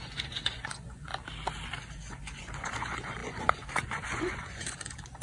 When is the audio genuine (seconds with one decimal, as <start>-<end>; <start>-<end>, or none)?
1.1-1.9